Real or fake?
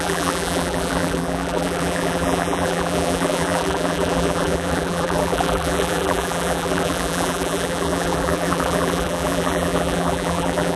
fake